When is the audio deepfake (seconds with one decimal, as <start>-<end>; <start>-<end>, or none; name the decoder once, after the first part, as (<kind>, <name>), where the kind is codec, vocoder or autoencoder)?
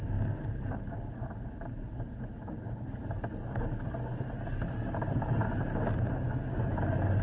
none